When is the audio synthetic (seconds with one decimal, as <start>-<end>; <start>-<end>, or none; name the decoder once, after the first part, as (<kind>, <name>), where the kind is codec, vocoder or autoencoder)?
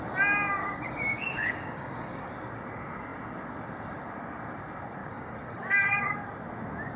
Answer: 0.6-2.3 (codec, DAC); 5.0-6.0